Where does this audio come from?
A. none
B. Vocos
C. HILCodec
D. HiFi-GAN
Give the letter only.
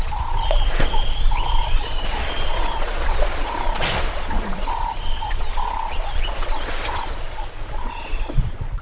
B